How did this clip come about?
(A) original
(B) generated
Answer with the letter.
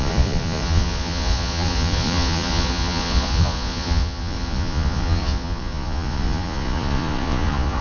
B